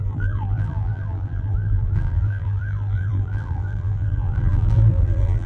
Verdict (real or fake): fake